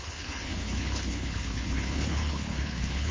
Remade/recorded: remade